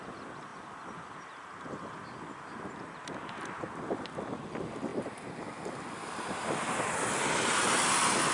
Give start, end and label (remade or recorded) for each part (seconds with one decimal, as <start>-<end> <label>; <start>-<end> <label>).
0.0-8.3 recorded